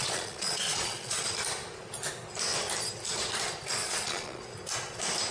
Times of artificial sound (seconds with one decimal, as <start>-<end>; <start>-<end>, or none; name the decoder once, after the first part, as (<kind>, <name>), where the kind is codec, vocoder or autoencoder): 0.0-1.2 (vocoder, Vocos); 3.8-4.4